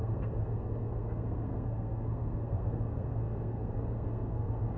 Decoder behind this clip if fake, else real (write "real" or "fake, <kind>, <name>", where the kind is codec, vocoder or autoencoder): fake, codec, SNAC